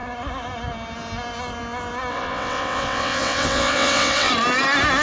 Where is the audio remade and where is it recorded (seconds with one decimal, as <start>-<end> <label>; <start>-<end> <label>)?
0.0-2.1 recorded; 2.1-4.3 remade; 4.3-5.0 recorded